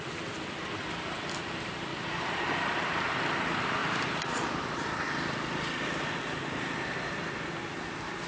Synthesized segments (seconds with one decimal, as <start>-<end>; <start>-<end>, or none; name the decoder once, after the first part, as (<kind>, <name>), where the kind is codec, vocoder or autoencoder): 1.9-3.1 (vocoder, BigVGAN v2)

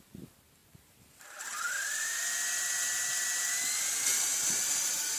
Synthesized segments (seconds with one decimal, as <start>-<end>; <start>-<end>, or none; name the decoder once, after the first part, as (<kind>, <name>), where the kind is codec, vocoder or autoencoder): none

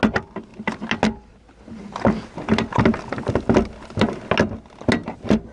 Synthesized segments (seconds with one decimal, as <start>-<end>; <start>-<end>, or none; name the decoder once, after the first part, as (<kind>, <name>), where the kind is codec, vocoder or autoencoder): none